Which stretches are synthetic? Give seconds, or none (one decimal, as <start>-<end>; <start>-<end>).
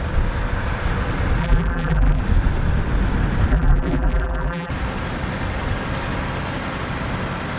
1.4-2.2; 3.5-4.7